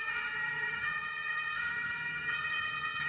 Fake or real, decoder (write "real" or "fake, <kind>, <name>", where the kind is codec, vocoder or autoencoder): fake, vocoder, HiFi-GAN